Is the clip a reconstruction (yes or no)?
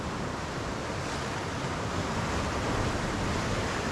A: no